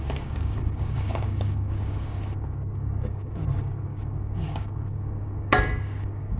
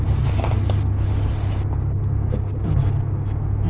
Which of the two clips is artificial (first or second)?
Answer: first